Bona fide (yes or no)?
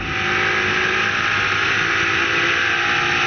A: yes